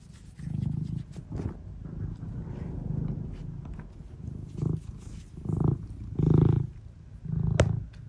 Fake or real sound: real